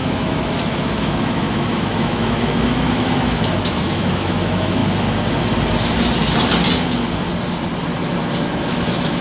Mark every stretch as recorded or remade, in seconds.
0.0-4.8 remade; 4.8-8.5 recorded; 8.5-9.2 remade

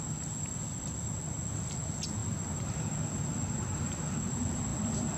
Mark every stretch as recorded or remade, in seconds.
0.0-2.2 recorded; 2.2-4.0 remade; 4.0-5.2 recorded

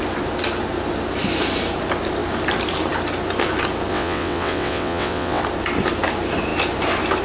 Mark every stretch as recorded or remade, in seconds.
0.0-3.9 recorded; 3.9-5.4 remade; 5.4-7.2 recorded